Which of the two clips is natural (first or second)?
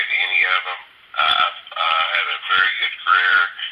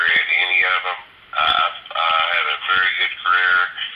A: second